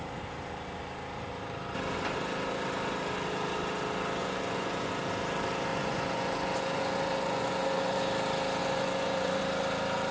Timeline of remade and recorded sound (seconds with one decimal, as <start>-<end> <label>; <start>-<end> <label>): 0.0-4.2 recorded; 4.2-4.9 remade; 4.9-5.7 recorded; 5.7-8.1 remade; 8.1-8.6 recorded; 8.6-9.4 remade; 9.4-10.1 recorded